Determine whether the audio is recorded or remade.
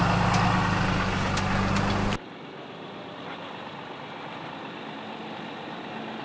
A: recorded